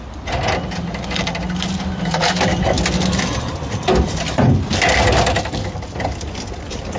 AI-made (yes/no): no